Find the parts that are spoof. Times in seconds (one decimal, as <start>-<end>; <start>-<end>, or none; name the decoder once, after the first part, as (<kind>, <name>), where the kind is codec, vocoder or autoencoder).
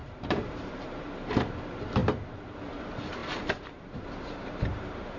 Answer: 0.0-5.2 (vocoder, BigVGAN v2)